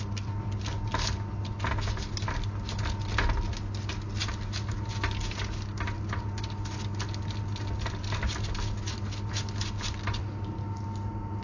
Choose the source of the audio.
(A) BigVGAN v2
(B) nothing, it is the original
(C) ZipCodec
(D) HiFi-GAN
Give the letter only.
B